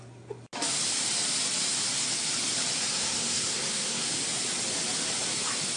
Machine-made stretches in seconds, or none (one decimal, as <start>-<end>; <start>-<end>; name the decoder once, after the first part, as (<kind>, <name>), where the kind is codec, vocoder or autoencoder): 2.9-4.1 (codec, SNAC)